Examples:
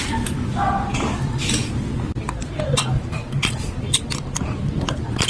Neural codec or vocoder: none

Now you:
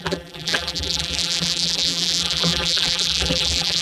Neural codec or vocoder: vocoder, BigVGAN v2